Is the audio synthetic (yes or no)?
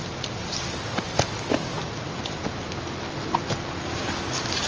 no